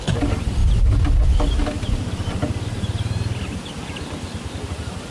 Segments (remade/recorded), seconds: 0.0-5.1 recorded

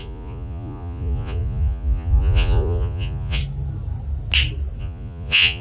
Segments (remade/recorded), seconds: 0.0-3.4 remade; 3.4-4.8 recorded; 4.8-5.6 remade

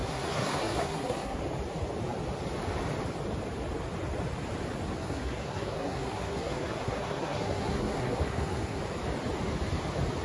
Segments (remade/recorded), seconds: 0.0-1.4 remade; 1.4-5.0 recorded; 5.0-8.8 remade; 8.8-10.2 recorded